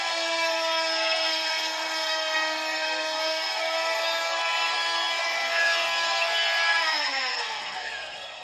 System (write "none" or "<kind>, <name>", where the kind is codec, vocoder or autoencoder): codec, SNAC